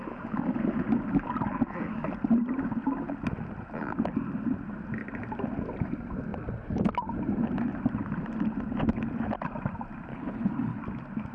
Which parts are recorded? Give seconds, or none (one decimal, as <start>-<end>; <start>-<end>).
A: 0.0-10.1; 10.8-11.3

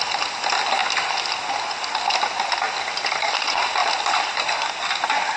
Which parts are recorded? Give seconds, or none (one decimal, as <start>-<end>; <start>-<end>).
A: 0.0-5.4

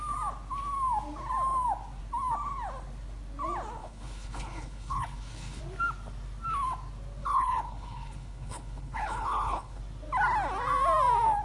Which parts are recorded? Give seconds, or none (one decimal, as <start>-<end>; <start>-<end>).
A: 0.0-3.8; 5.6-7.2; 9.8-11.4

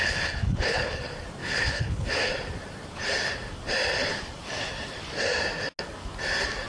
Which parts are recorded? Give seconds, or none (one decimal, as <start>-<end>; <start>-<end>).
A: 1.0-1.4; 2.3-6.7

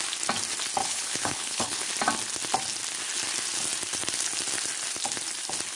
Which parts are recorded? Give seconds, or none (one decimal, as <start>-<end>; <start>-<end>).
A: 0.0-0.8; 1.9-5.8

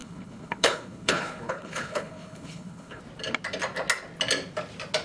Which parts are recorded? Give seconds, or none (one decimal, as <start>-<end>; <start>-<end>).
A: 3.0-5.0

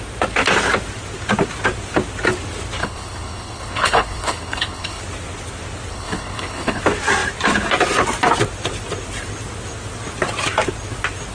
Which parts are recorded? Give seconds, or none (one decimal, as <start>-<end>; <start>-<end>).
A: 0.0-2.8; 5.0-5.9; 6.8-11.3

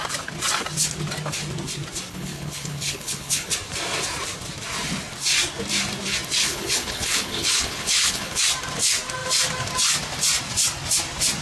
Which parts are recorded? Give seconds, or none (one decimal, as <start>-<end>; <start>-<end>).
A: 0.0-2.1; 3.5-6.4; 8.4-11.4